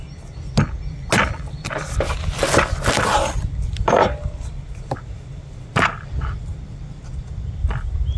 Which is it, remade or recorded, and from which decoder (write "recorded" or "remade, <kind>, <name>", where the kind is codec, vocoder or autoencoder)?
recorded